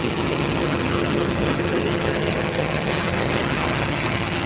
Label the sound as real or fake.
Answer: fake